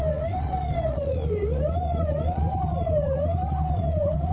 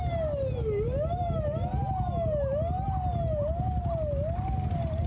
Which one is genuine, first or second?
second